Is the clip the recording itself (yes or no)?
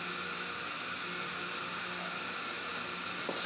yes